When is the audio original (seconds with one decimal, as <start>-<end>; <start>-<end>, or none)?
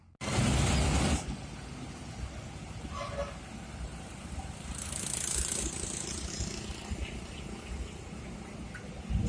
0.0-3.9; 6.3-9.3